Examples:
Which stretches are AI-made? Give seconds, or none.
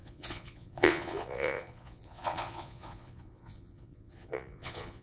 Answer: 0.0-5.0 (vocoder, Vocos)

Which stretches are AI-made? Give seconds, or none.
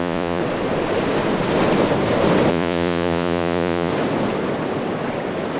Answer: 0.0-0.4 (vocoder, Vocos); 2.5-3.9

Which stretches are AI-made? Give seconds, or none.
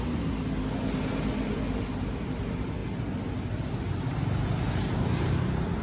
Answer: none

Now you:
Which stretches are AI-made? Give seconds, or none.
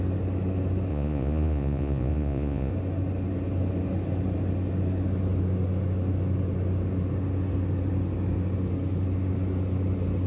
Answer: 0.9-2.7 (vocoder, Vocos)